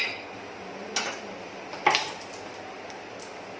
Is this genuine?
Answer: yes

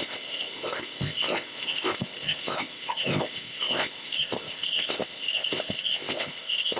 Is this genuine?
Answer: no